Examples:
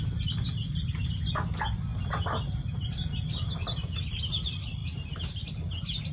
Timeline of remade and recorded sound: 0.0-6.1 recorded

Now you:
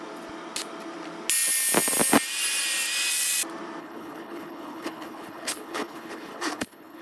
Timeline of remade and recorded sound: 0.0-3.8 recorded; 3.8-7.0 remade

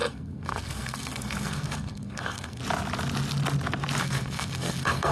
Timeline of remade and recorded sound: 0.0-2.6 remade; 2.6-4.0 recorded; 4.0-5.1 remade

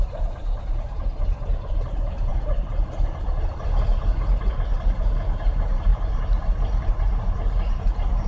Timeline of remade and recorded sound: 0.0-8.3 remade

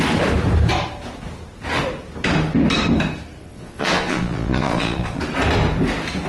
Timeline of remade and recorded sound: 0.0-3.4 recorded; 3.4-5.2 remade; 5.2-6.3 recorded

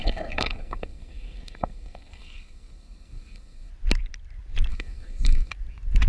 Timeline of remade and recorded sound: 0.0-3.7 remade; 3.7-4.7 recorded; 4.7-5.5 remade; 5.5-6.1 recorded

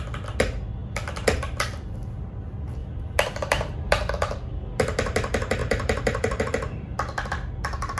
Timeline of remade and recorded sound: 0.0-2.8 recorded; 2.8-4.1 remade; 4.1-5.6 recorded; 5.6-6.4 remade; 6.4-8.0 recorded

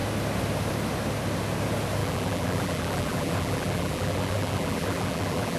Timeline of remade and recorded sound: 0.0-2.0 recorded; 2.0-5.6 remade